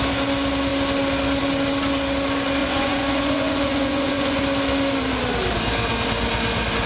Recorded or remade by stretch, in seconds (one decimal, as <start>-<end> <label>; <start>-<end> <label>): 0.0-2.6 recorded; 2.6-4.4 remade; 4.4-6.9 recorded